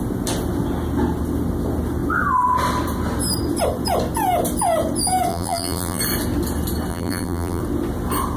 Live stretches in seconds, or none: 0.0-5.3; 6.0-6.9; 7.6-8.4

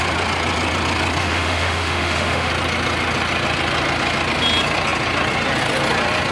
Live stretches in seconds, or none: 0.0-1.2; 2.5-6.3

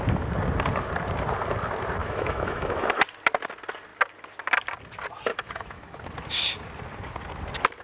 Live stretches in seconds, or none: 0.0-2.0; 3.0-5.3; 6.0-7.8

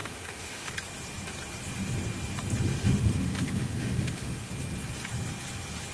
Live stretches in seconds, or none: 0.7-2.7; 4.5-5.9

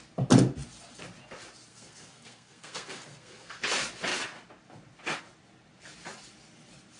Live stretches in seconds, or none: 0.0-1.7; 3.6-7.0